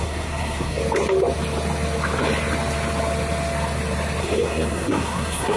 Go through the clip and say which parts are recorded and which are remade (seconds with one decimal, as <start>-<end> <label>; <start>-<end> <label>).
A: 0.0-0.8 remade; 0.8-4.2 recorded; 4.2-5.6 remade